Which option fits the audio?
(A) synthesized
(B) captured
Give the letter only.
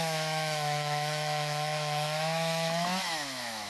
A